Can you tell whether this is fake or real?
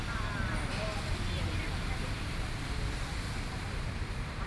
fake